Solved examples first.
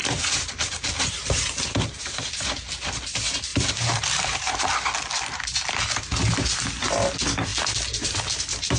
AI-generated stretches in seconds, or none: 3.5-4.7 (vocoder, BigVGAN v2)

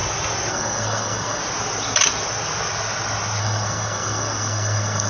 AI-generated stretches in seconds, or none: 0.5-1.4 (codec, SNAC); 3.4-5.1

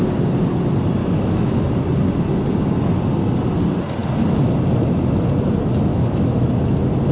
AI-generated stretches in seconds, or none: 1.0-1.6 (autoencoder, DAC-VAE); 5.9-6.6

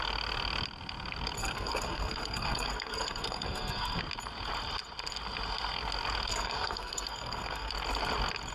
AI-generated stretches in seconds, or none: 1.4-4.0 (codec, SNAC); 6.3-7.7